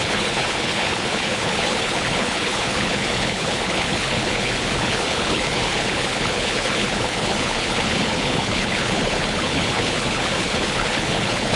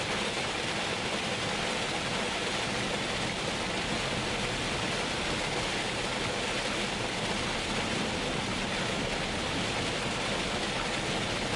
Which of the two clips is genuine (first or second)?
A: second